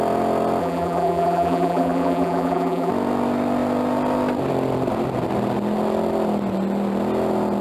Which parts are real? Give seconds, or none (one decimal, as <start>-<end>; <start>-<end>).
0.0-0.6; 2.9-7.6